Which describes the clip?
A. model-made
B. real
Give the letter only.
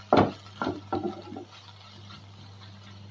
B